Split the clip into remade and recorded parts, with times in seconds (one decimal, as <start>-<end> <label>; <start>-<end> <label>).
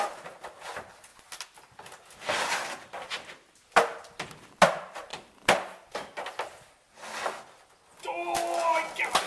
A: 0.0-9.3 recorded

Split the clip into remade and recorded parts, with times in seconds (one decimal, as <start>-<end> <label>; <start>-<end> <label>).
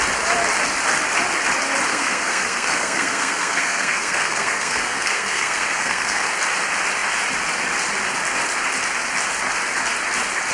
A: 0.0-1.9 recorded; 1.9-6.3 remade; 6.3-10.5 recorded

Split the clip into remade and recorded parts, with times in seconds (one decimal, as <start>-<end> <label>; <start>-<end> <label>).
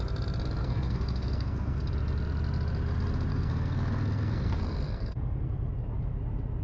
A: 0.0-0.6 recorded; 0.6-1.9 remade; 1.9-3.3 recorded; 3.3-5.7 remade; 5.7-6.6 recorded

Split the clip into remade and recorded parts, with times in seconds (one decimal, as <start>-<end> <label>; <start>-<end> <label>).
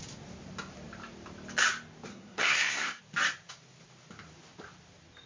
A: 0.0-2.1 recorded; 2.1-3.0 remade; 3.0-5.3 recorded